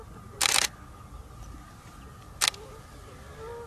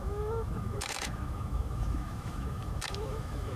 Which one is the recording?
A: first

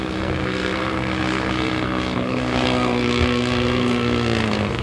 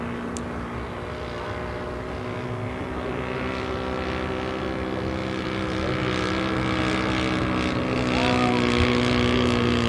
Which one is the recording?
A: second